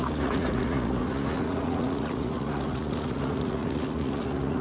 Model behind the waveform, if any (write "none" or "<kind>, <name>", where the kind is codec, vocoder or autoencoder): vocoder, Vocos